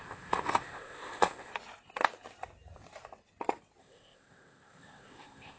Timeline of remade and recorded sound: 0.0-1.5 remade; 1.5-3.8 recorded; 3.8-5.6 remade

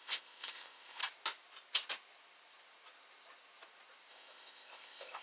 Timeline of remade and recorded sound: 0.0-1.0 remade; 1.0-4.1 recorded; 4.1-5.2 remade

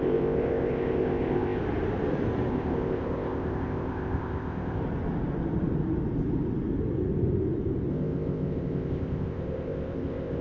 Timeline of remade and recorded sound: 0.0-1.6 remade; 1.6-2.5 recorded; 2.5-4.8 remade; 4.8-7.9 recorded; 7.9-10.4 remade

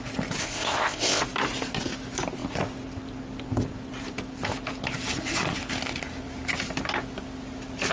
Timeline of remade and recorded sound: 0.0-0.4 recorded; 0.4-1.2 remade; 1.2-7.9 recorded